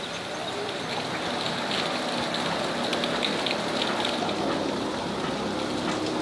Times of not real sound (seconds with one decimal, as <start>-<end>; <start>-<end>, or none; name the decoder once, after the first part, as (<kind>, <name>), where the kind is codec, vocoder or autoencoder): none